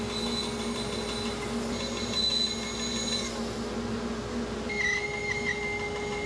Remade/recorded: recorded